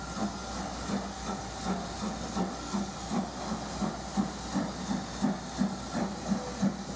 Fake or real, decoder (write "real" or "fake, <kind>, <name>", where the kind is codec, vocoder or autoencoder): real